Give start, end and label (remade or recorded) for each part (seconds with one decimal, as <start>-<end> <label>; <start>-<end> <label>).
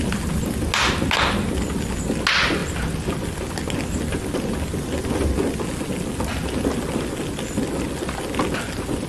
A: 0.0-9.1 recorded